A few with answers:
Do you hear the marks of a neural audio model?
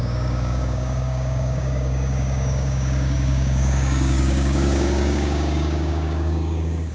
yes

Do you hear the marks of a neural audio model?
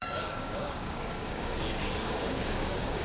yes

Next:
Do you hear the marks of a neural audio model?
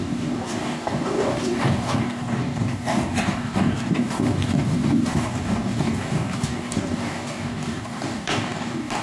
yes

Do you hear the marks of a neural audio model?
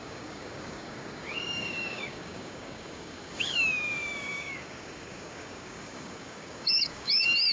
yes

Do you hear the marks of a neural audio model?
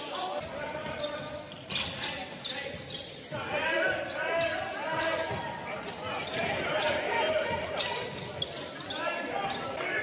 no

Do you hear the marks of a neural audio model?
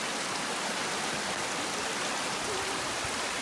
no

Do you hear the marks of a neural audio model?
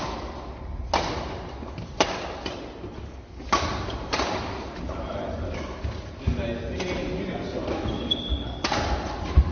no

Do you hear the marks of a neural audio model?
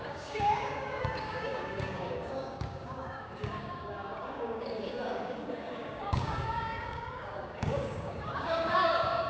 yes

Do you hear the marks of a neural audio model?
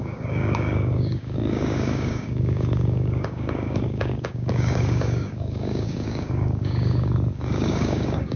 yes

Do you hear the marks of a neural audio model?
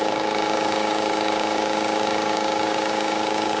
yes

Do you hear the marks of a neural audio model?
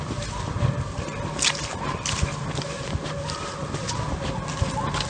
no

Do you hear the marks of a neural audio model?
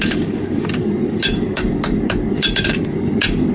yes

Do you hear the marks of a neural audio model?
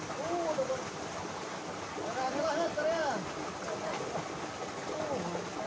no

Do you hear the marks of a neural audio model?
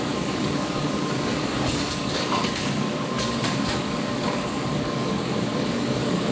yes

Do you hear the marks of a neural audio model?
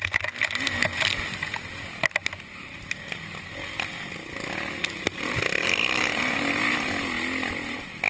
no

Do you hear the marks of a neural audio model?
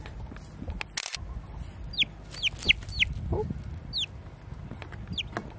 no